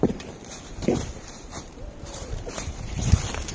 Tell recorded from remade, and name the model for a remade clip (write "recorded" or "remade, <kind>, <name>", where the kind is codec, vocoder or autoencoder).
remade, vocoder, BigVGAN v2